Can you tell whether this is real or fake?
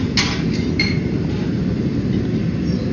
real